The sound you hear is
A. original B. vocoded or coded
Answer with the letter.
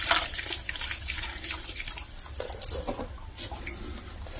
A